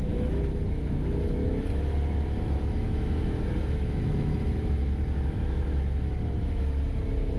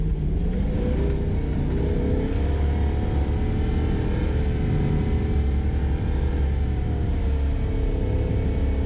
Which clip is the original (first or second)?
second